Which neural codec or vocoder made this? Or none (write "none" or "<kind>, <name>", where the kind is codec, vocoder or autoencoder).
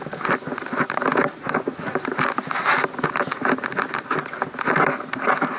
none